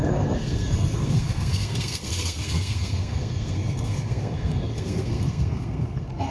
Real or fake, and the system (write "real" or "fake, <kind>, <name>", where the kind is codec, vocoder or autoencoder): fake, codec, SNAC